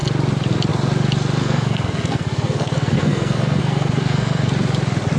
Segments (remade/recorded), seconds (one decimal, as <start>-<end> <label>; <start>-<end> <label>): 0.0-1.4 recorded; 1.4-4.5 remade; 4.5-5.2 recorded